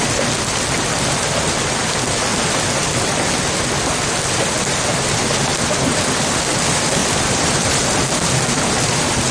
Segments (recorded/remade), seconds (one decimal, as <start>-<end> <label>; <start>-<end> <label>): 0.0-2.3 recorded; 2.3-3.6 remade; 3.6-5.5 recorded; 5.5-6.2 remade; 6.2-7.0 recorded; 7.0-8.0 remade; 8.0-9.3 recorded